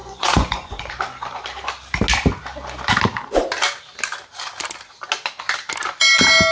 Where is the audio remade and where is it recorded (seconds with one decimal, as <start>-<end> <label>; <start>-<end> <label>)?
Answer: 0.0-1.0 remade; 1.0-6.5 recorded